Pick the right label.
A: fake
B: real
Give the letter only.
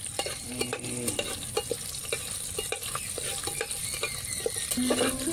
B